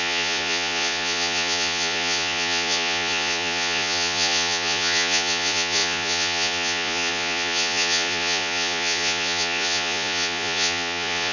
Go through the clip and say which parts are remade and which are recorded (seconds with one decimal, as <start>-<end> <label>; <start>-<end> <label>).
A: 0.0-11.3 remade

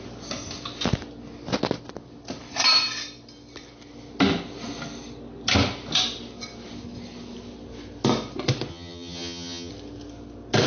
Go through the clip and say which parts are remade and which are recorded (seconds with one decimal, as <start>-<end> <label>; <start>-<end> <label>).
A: 0.0-8.7 recorded; 8.7-9.7 remade; 9.7-10.7 recorded

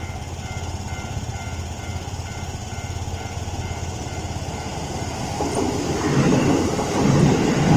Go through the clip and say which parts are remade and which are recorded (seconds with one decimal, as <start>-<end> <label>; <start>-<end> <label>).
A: 0.0-7.8 recorded

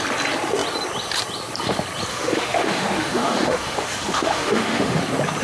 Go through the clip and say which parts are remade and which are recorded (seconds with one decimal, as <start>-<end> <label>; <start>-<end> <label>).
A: 0.0-2.1 recorded; 2.1-5.0 remade; 5.0-5.4 recorded

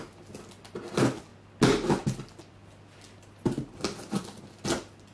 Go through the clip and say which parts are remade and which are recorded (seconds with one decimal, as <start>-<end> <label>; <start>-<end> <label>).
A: 0.0-5.1 recorded

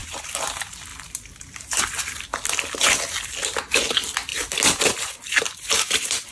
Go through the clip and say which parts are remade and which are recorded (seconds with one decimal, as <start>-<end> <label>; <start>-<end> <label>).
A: 0.0-6.3 recorded